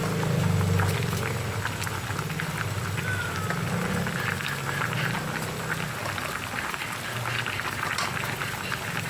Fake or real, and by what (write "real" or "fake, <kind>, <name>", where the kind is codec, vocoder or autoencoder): real